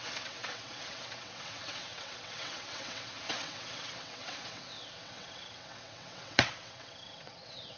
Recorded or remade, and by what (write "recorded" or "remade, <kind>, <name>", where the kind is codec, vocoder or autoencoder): remade, vocoder, WaveNeXt